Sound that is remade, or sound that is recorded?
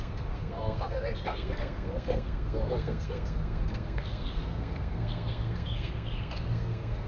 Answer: remade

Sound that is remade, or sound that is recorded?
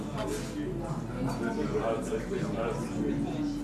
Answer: recorded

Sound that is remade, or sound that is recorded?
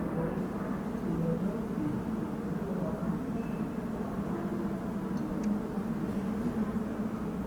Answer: recorded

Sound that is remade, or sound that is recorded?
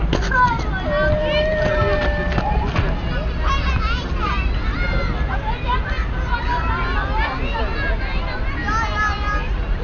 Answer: recorded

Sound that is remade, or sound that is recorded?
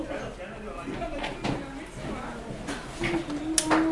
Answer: recorded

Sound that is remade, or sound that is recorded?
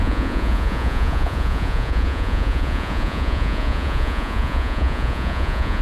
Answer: remade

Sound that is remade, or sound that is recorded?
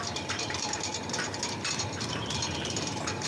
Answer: remade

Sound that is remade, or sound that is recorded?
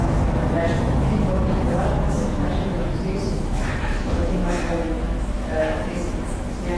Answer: remade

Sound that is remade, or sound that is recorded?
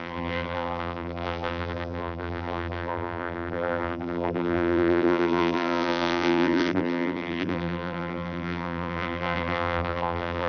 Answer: remade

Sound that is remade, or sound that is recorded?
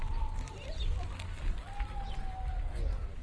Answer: recorded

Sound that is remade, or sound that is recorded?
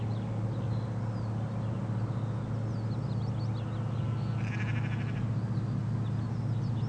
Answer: recorded